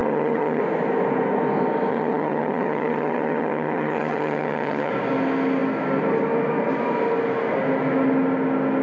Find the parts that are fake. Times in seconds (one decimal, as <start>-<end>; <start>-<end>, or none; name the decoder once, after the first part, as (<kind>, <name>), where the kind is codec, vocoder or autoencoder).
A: 0.0-0.6 (vocoder, HiFi-GAN); 1.9-4.9